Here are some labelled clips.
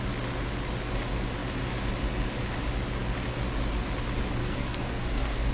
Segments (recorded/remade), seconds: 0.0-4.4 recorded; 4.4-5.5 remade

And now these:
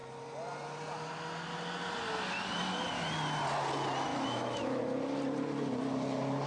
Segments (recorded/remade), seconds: 0.0-4.1 recorded; 4.1-4.8 remade; 4.8-6.5 recorded

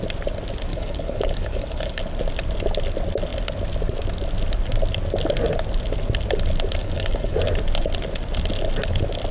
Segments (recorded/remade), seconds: 0.0-0.7 recorded; 0.7-2.0 remade; 2.0-6.8 recorded; 6.8-7.4 remade; 7.4-9.3 recorded